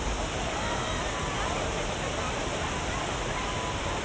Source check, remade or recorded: recorded